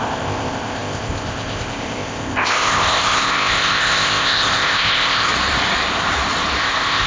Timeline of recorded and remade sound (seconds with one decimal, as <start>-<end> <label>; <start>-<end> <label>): 0.0-5.3 remade; 5.3-6.6 recorded; 6.6-7.1 remade